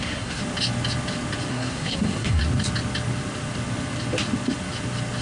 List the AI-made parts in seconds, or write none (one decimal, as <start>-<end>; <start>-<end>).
0.0-0.4; 1.5-2.4